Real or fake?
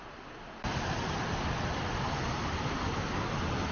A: real